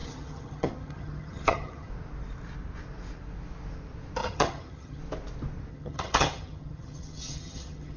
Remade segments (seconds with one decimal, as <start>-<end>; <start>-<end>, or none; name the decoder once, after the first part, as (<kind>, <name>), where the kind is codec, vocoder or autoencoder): 0.0-1.9 (vocoder, HiFi-GAN); 4.2-5.0; 5.7-8.0